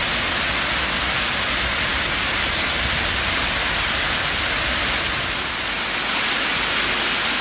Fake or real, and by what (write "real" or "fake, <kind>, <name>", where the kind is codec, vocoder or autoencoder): real